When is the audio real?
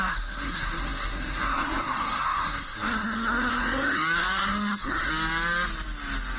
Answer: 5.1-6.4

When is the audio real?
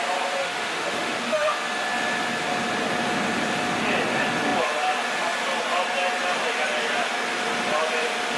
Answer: 0.0-0.4; 1.5-8.4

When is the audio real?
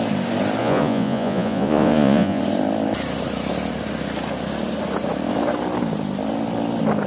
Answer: 0.0-0.6; 2.4-7.1